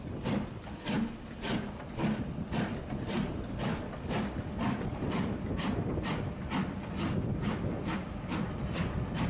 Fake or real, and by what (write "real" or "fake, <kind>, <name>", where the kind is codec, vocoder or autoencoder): real